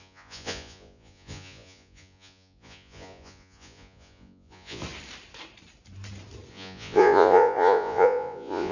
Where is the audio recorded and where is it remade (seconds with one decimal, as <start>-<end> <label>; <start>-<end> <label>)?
0.0-4.8 remade; 4.8-6.5 recorded; 6.5-8.7 remade